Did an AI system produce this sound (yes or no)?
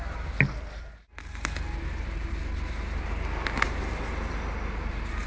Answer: no